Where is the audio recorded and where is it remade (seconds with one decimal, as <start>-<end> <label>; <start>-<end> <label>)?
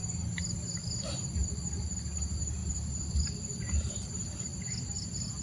0.0-2.6 recorded; 2.6-3.9 remade; 3.9-5.4 recorded